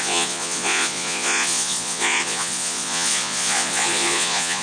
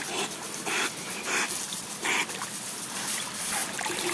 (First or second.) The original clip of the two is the second